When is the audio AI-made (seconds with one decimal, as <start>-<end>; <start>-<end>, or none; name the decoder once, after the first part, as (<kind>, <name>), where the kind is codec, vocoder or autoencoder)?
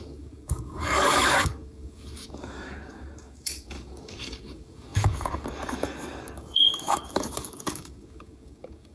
0.0-8.9 (codec, DAC)